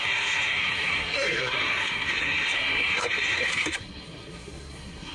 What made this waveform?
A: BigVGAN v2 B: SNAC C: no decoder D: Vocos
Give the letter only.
B